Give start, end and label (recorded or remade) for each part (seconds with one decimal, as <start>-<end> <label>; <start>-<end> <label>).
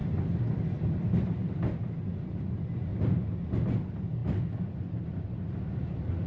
0.0-6.3 recorded